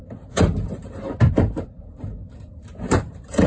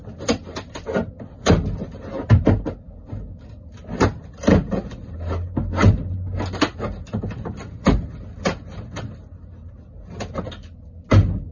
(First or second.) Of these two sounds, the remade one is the first